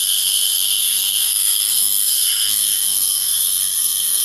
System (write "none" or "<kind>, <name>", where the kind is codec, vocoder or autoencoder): codec, SNAC